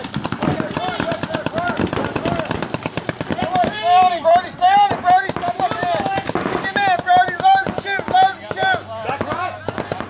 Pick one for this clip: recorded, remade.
recorded